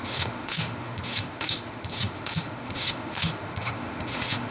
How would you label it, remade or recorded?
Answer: remade